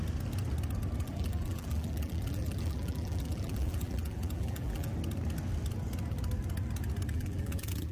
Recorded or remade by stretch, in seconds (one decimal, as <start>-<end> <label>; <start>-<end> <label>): 0.0-1.0 recorded; 1.0-4.9 remade; 4.9-7.1 recorded; 7.1-7.9 remade